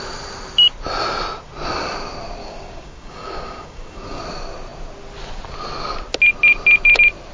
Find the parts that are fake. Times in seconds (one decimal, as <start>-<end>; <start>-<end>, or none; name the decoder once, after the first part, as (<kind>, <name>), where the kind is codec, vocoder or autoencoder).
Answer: 2.4-4.2 (codec, DAC)